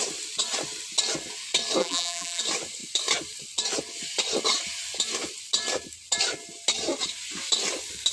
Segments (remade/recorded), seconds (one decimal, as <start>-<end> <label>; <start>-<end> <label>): 0.0-1.8 recorded; 1.8-2.4 remade; 2.4-8.1 recorded